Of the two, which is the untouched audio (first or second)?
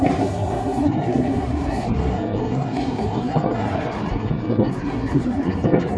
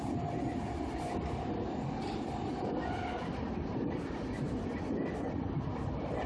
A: second